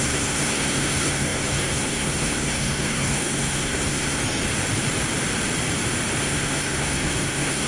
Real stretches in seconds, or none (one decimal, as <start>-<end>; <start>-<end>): 4.2-6.2

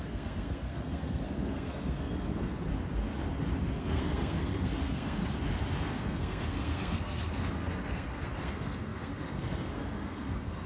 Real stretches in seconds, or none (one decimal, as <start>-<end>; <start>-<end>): 2.7-3.7; 5.2-5.9

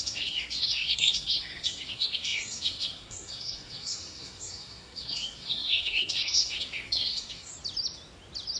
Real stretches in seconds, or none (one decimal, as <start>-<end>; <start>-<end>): 7.5-8.6

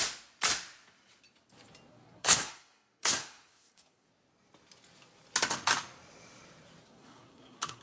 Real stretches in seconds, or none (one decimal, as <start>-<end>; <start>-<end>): 0.0-1.9; 4.1-6.8

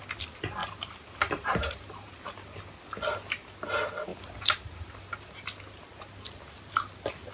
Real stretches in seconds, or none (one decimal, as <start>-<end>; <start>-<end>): 0.0-0.6; 2.1-4.1; 5.3-7.3